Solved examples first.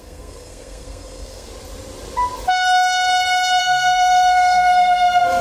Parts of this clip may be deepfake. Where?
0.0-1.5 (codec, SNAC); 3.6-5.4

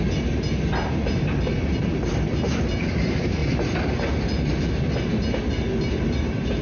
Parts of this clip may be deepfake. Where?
none

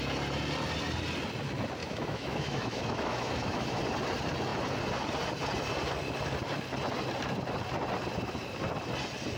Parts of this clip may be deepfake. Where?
1.8-3.8 (autoencoder, DAC-VAE)

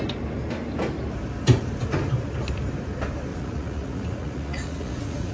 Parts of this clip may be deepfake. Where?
3.3-5.3 (vocoder, Vocos)

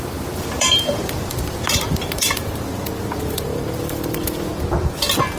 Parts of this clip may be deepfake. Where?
0.0-4.5 (vocoder, BigVGAN v2)

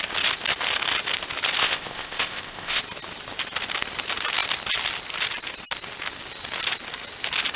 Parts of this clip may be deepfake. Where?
1.6-2.8 (codec, ZipCodec)